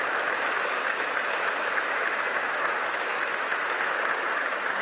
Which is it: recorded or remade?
remade